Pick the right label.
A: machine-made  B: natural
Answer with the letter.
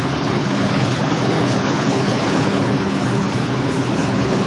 A